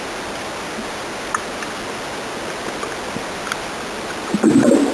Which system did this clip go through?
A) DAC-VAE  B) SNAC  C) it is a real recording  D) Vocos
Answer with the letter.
C